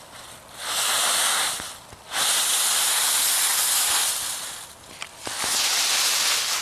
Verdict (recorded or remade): recorded